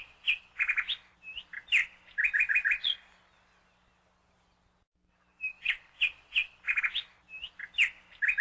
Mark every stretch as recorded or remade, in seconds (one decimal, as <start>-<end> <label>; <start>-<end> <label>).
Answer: 0.0-8.4 recorded